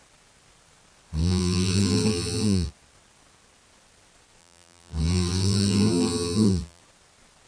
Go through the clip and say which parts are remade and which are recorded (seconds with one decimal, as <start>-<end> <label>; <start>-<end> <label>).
0.0-1.2 recorded; 1.2-2.7 remade; 2.7-4.4 recorded; 4.4-6.8 remade; 6.8-7.5 recorded